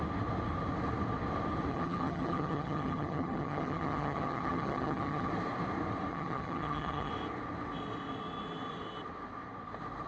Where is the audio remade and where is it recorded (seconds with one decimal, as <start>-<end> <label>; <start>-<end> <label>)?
0.0-1.7 recorded; 1.7-5.3 remade; 5.3-6.1 recorded; 6.1-7.1 remade; 7.1-10.1 recorded